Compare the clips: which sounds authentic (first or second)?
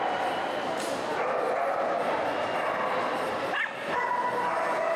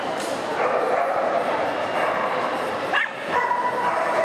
first